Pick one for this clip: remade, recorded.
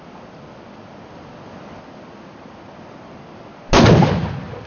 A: recorded